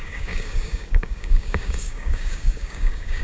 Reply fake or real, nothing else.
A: fake